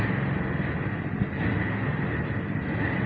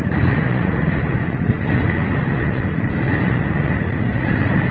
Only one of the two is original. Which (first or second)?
first